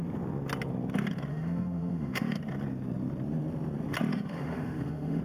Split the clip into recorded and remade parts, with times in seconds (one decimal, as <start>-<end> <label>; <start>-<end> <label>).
0.0-1.3 recorded; 1.3-2.4 remade; 2.4-4.1 recorded; 4.1-5.2 remade